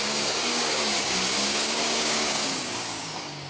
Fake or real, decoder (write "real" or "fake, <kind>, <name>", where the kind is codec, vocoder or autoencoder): fake, codec, DAC